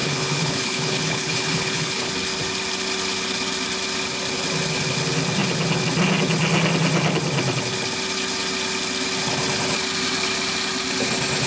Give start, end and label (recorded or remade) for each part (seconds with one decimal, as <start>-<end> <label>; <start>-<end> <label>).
0.0-2.1 remade; 2.1-11.5 recorded